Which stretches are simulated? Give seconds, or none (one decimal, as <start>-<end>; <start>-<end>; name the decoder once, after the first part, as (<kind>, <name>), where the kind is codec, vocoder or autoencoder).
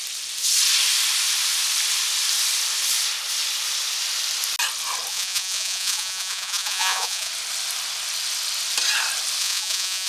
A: 5.1-7.3 (vocoder, Vocos); 9.4-10.1